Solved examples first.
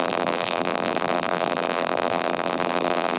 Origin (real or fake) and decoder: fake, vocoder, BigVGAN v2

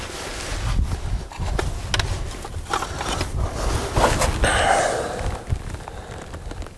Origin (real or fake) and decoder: real